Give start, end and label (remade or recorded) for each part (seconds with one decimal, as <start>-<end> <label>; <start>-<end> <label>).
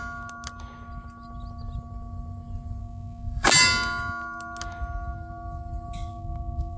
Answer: 0.0-2.8 recorded; 2.8-3.5 remade; 3.5-6.1 recorded; 6.1-6.8 remade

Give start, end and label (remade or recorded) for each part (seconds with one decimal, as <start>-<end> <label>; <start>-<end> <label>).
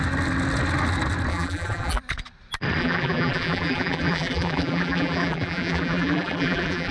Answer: 0.0-1.3 recorded; 1.3-2.0 remade; 2.0-2.8 recorded; 2.8-6.9 remade